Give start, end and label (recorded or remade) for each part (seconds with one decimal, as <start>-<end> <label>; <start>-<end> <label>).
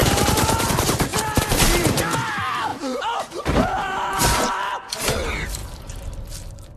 0.0-0.7 remade; 0.7-1.1 recorded; 1.1-2.0 remade; 2.0-2.7 recorded; 2.7-4.7 remade; 4.7-6.8 recorded